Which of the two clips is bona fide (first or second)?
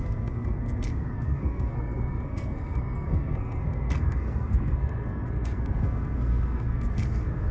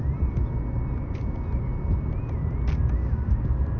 second